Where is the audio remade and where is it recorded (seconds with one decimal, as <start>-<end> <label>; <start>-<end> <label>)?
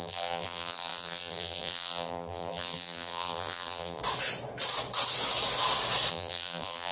0.0-4.0 remade; 4.0-6.1 recorded; 6.1-6.9 remade